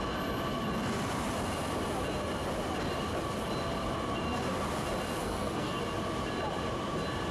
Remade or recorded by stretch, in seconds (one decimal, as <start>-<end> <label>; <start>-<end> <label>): 0.0-5.2 recorded; 5.2-5.8 remade; 5.8-7.3 recorded